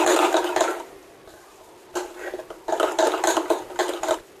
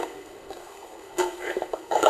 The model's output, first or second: second